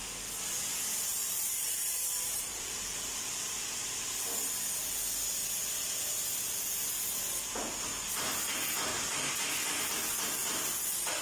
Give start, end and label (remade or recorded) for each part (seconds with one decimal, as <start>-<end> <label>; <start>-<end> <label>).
0.0-1.2 recorded; 1.2-3.8 remade; 3.8-8.9 recorded; 8.9-9.9 remade; 9.9-11.2 recorded